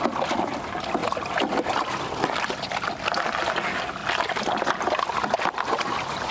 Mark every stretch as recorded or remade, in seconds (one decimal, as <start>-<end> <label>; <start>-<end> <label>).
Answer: 0.0-6.3 recorded